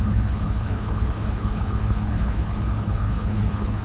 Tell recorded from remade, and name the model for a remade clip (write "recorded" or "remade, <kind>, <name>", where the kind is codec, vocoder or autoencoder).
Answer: remade, codec, HILCodec